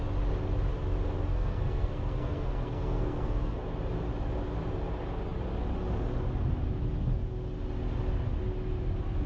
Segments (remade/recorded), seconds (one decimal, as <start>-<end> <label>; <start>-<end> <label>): 0.0-1.3 recorded; 1.3-3.6 remade; 3.6-9.3 recorded